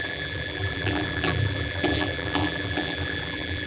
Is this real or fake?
fake